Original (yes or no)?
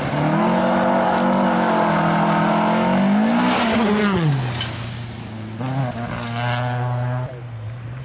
yes